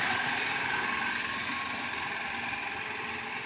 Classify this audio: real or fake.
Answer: fake